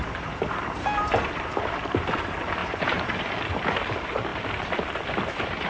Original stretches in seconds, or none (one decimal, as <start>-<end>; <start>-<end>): 4.3-5.3